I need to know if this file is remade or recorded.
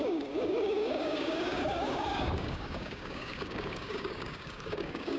remade